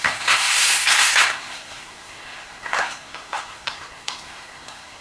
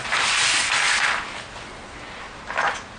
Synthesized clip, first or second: first